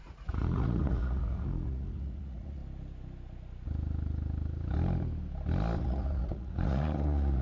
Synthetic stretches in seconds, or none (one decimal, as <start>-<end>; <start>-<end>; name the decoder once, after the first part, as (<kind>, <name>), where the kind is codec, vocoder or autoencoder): 0.0-2.6 (vocoder, Vocos); 5.8-7.4